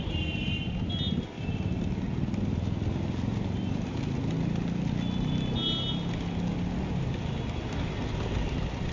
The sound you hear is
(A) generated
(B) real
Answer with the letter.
B